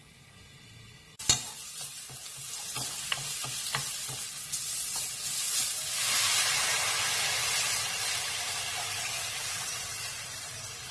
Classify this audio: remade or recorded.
recorded